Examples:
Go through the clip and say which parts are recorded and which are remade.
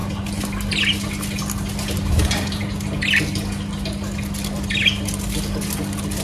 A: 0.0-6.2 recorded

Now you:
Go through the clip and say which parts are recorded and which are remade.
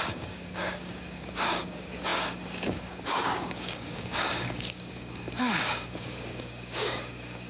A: 0.0-7.5 remade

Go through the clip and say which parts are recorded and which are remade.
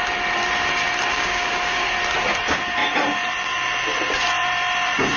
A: 0.0-1.1 recorded; 1.1-1.9 remade; 1.9-5.2 recorded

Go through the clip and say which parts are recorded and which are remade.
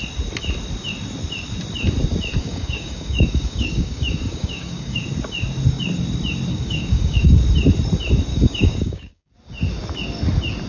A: 0.0-2.4 recorded; 2.4-5.0 remade; 5.0-6.5 recorded; 6.5-7.4 remade; 7.4-8.3 recorded; 8.3-9.3 remade; 9.3-10.7 recorded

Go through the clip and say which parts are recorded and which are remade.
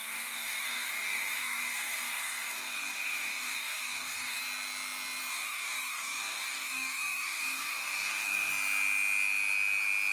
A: 0.0-4.4 remade; 4.4-5.3 recorded; 5.3-8.5 remade; 8.5-10.1 recorded